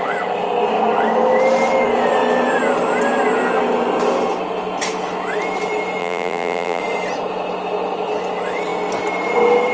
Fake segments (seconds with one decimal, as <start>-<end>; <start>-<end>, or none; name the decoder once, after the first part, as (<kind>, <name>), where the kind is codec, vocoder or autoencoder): 6.0-6.8 (vocoder, BigVGAN v2)